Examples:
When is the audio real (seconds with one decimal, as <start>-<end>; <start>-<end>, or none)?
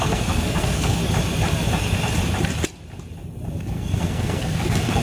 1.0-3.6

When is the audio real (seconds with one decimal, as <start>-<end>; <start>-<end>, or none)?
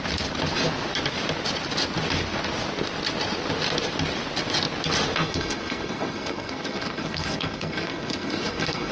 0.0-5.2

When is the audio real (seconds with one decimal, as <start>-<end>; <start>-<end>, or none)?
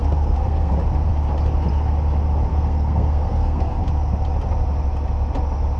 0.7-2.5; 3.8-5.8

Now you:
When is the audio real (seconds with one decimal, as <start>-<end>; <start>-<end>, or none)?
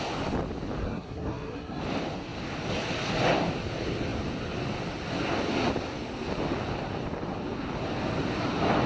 0.0-0.8; 1.8-8.9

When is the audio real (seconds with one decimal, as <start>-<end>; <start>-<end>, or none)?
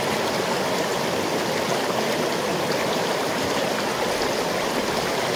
0.0-5.4